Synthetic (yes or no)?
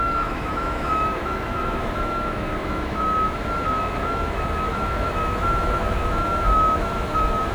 yes